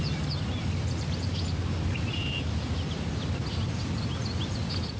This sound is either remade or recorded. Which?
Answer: recorded